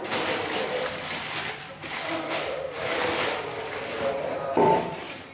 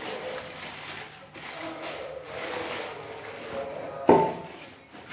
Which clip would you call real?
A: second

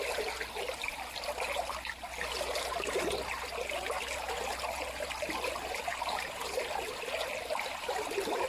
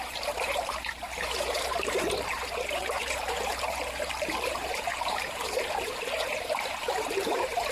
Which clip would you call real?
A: first